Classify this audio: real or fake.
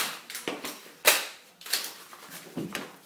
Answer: fake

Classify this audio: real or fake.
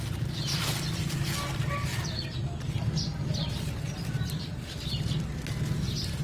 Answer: real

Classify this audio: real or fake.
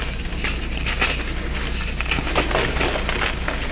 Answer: real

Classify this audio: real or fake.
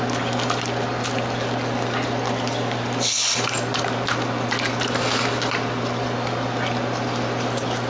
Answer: real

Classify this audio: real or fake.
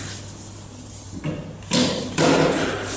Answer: real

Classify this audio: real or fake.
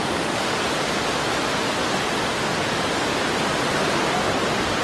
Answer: real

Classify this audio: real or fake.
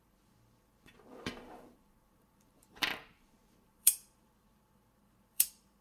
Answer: fake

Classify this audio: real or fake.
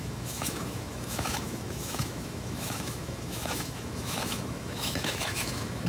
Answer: fake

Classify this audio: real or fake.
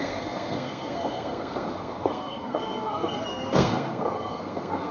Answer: fake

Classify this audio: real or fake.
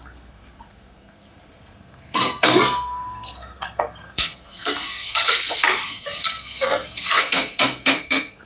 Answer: fake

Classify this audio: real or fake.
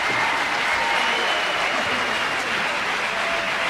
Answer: real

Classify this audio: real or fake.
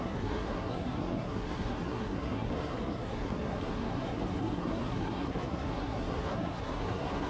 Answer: fake